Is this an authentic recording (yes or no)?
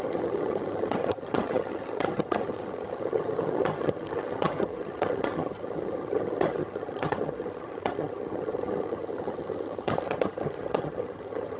no